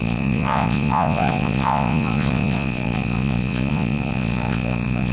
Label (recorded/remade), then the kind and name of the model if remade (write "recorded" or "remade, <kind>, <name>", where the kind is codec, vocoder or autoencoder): remade, vocoder, Vocos